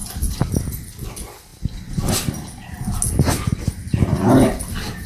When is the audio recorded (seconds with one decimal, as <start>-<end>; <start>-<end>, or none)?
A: 0.0-5.1